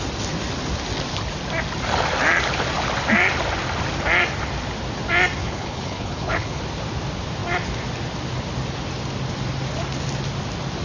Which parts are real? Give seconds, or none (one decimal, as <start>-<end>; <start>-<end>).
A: 0.0-5.4; 6.6-10.8